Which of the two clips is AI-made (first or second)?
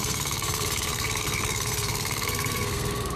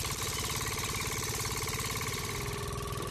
first